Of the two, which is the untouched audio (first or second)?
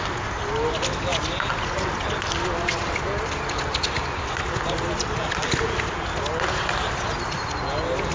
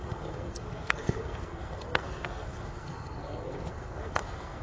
first